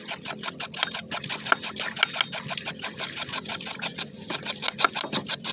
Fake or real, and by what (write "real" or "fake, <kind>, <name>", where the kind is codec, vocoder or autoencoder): real